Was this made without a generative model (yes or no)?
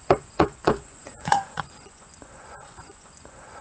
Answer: no